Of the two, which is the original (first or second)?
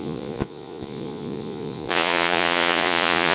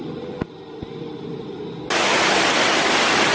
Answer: second